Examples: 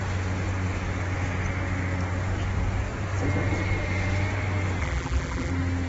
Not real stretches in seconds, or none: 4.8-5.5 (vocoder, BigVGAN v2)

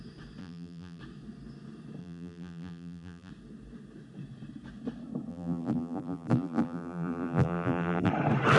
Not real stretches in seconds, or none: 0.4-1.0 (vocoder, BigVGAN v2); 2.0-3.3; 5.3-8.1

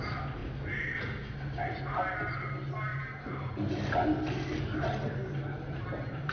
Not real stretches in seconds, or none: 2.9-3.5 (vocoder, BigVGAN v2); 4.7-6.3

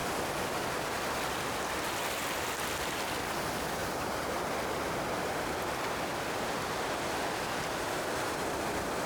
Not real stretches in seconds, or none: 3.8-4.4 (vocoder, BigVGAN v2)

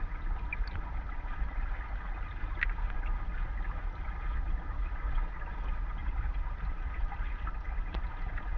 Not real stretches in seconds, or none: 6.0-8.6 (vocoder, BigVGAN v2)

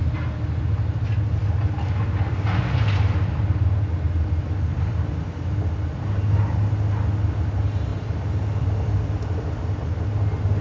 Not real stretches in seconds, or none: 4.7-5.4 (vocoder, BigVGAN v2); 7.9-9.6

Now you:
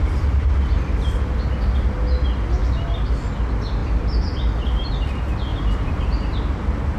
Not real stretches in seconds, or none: 2.6-3.3 (vocoder, BigVGAN v2); 3.8-4.9; 5.5-6.0

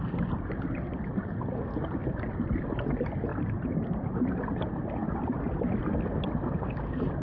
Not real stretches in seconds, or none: 2.0-2.7 (vocoder, BigVGAN v2); 3.3-4.0; 5.0-5.8